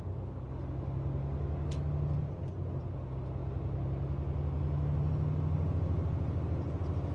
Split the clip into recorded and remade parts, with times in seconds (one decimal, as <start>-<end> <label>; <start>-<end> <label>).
0.0-7.1 recorded